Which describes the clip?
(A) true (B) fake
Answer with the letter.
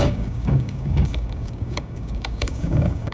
B